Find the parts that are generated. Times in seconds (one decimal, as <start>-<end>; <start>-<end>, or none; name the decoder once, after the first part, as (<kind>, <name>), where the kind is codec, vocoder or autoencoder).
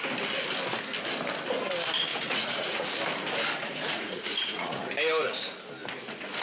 2.1-2.8 (vocoder, Vocos); 3.6-4.9